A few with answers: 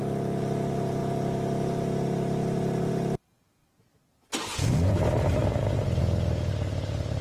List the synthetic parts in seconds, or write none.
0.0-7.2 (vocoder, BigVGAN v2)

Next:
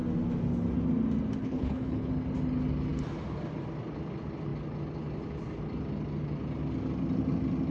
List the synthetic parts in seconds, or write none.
1.4-2.1 (codec, HILCodec)

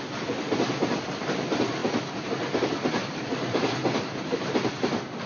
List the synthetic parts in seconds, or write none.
0.0-5.3 (vocoder, BigVGAN v2)

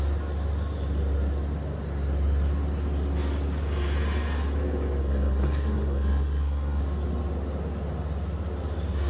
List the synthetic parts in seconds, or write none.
5.0-6.8 (codec, SNAC)

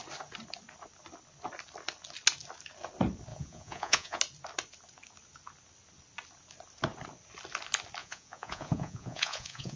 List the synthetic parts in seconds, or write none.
3.3-4.2 (vocoder, Vocos); 8.0-9.8